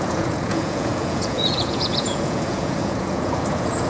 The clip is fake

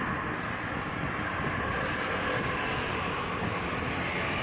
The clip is real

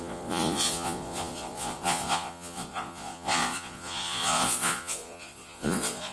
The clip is fake